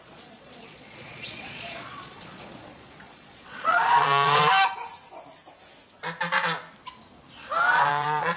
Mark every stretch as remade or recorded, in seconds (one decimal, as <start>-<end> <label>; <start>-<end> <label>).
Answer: 0.0-4.4 remade; 4.4-7.9 recorded; 7.9-8.4 remade